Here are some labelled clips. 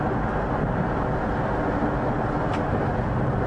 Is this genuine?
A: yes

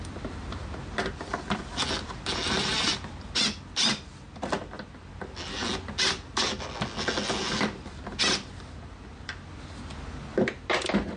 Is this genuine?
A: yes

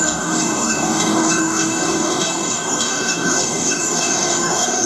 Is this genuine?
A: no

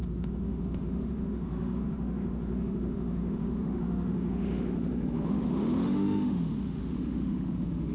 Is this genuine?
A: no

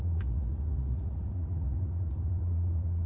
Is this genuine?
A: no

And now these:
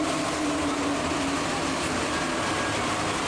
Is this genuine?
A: yes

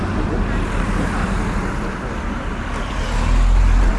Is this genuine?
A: yes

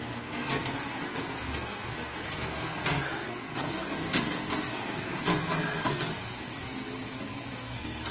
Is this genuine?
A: no